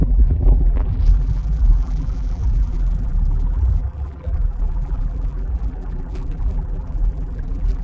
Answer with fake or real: fake